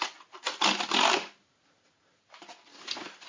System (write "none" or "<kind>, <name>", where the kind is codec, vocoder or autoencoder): none